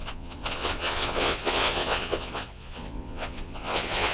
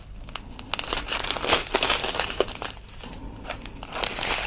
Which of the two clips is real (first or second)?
second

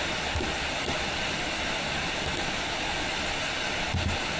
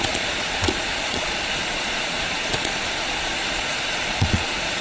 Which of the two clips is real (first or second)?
first